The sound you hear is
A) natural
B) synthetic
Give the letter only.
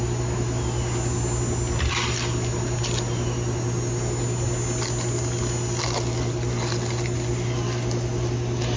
A